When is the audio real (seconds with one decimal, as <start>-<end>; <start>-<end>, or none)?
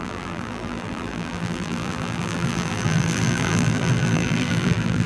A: none